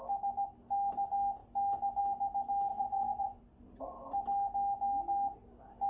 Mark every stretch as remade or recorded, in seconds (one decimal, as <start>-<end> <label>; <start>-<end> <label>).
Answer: 0.0-2.7 recorded; 2.7-3.4 remade; 3.4-5.9 recorded